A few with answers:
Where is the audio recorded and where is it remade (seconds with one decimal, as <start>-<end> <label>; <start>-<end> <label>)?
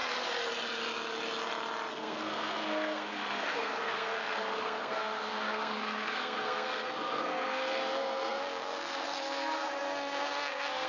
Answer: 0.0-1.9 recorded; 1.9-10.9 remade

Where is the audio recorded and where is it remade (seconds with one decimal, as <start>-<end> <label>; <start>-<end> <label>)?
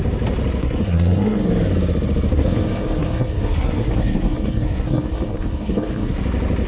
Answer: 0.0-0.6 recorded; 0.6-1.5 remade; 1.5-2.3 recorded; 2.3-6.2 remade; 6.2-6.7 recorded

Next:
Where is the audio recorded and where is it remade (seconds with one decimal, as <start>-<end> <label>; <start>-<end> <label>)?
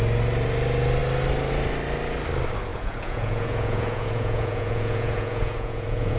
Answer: 0.0-2.7 recorded; 2.7-6.2 remade